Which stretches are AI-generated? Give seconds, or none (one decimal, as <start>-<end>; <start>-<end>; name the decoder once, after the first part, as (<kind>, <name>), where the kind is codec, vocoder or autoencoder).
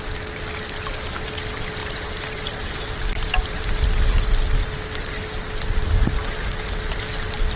1.8-3.7 (vocoder, BigVGAN v2)